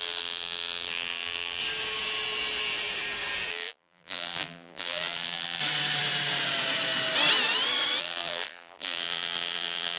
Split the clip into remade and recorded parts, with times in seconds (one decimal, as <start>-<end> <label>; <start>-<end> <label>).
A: 0.0-1.6 remade; 1.6-3.5 recorded; 3.5-5.6 remade; 5.6-8.0 recorded; 8.0-10.0 remade